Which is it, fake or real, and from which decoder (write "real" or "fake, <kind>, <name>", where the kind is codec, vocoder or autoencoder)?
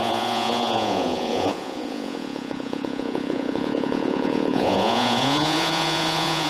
fake, vocoder, Vocos